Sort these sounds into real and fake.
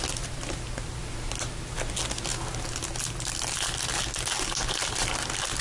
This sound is real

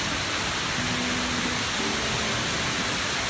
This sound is real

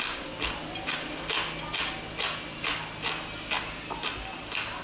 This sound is real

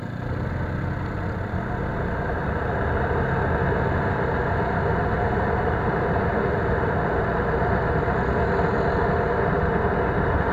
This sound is real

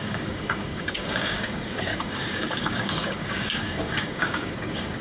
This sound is fake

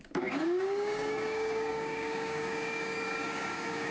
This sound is fake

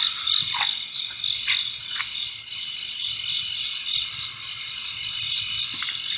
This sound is real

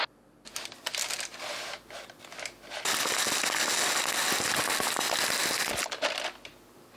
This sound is real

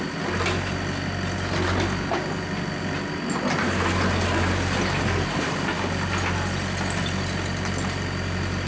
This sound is real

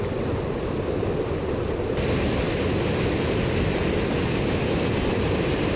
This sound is real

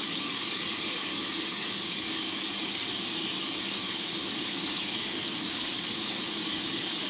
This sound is fake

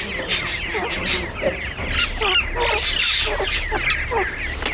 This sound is real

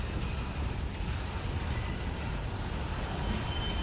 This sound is real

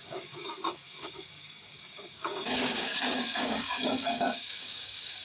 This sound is fake